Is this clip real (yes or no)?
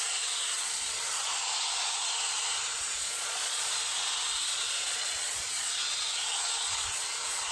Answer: no